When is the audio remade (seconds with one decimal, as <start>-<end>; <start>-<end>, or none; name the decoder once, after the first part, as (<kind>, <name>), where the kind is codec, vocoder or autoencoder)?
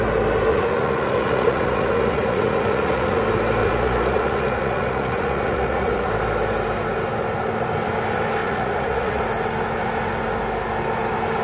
0.5-3.2 (vocoder, Vocos); 3.6-6.1; 8.4-9.2